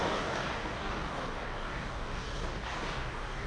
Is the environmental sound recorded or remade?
remade